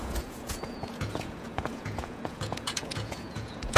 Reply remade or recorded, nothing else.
remade